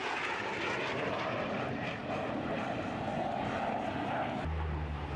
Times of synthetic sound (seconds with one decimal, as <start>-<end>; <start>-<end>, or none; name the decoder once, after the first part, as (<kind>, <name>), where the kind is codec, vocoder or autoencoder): none